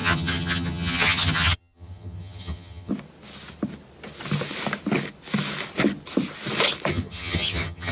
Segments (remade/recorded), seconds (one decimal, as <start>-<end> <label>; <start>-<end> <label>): 0.0-2.9 remade; 2.9-6.9 recorded; 6.9-7.9 remade